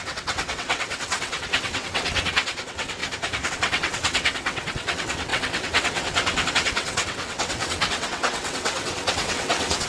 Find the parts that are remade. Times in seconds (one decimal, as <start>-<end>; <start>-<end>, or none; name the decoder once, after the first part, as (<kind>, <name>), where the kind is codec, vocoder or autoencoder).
0.0-3.0 (vocoder, WaveNeXt); 3.5-9.9